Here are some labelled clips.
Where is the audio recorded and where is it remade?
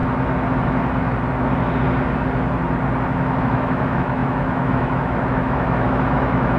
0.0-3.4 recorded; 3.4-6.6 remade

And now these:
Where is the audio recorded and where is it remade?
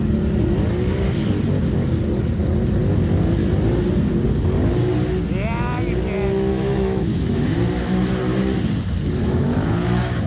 0.0-6.5 recorded; 6.5-7.6 remade; 7.6-9.2 recorded; 9.2-10.3 remade